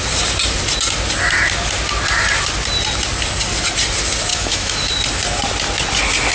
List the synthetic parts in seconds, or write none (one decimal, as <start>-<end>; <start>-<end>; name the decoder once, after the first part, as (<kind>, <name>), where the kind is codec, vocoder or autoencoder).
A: 4.3-4.9 (autoencoder, DAC-VAE)